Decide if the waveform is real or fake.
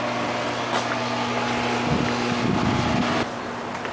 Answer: real